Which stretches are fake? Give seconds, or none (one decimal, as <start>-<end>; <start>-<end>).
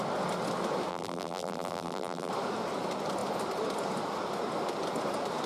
0.9-2.3